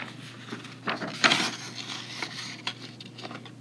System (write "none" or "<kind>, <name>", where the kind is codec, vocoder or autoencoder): none